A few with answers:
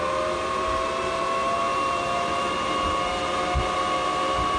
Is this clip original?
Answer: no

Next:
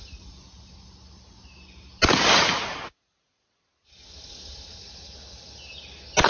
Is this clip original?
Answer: yes